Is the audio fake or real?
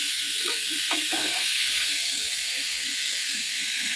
fake